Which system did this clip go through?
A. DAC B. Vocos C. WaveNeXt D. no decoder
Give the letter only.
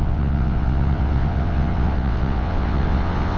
C